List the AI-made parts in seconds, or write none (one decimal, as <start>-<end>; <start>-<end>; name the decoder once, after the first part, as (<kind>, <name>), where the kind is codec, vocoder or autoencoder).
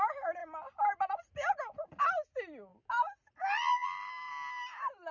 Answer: none